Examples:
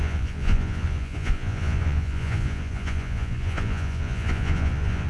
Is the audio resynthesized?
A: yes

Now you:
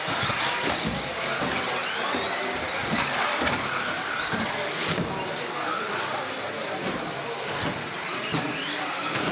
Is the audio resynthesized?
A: no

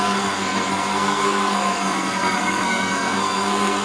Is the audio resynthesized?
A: yes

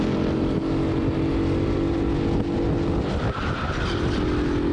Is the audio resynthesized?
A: no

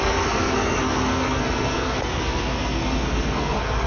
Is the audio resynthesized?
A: yes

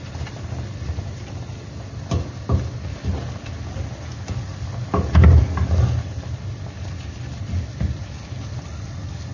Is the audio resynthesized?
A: no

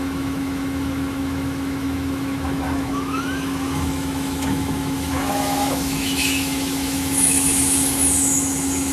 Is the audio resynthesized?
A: yes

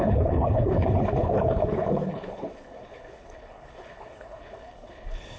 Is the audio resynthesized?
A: yes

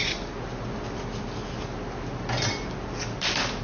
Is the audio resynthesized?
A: no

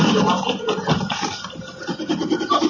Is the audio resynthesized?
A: no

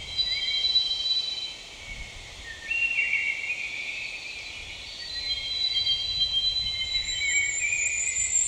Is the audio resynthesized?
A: yes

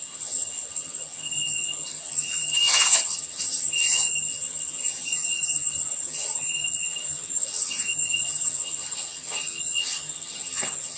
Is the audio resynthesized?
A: yes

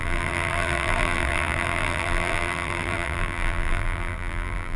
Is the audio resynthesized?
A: yes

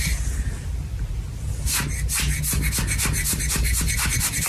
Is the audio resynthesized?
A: no